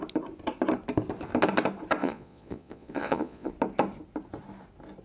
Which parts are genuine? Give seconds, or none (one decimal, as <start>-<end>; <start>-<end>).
0.0-2.0; 3.5-5.0